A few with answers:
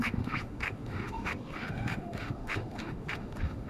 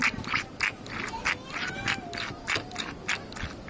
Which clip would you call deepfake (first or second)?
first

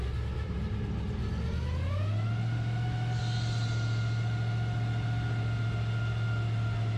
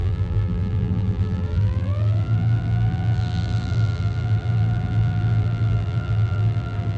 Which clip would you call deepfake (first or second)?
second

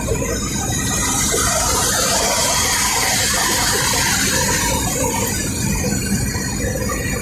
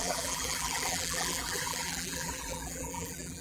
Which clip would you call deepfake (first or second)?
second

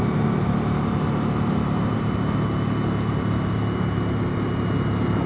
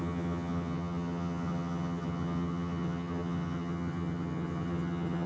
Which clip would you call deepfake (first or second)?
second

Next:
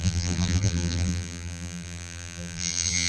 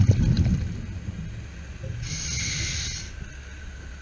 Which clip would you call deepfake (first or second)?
first